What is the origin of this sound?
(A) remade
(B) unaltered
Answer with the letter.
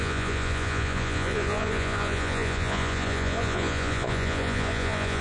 A